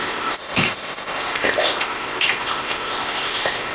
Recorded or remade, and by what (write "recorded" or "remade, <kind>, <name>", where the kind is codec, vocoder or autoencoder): remade, codec, ZipCodec